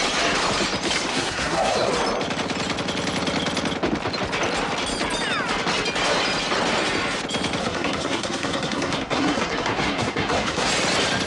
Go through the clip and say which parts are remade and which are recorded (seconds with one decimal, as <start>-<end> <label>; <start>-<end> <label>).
0.0-1.1 recorded; 1.1-1.9 remade; 1.9-7.6 recorded; 7.6-10.7 remade; 10.7-11.3 recorded